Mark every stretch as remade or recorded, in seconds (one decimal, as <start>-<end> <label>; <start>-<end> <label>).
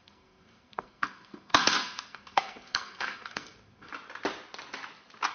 0.0-3.9 remade; 3.9-5.3 recorded